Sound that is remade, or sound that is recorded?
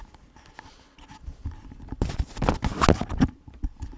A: recorded